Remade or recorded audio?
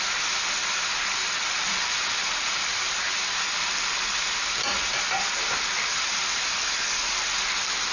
recorded